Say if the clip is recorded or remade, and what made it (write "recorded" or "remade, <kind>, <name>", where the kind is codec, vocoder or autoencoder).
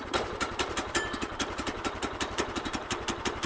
remade, vocoder, BigVGAN v2